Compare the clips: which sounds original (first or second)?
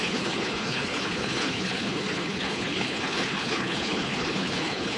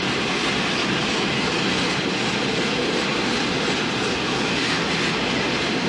second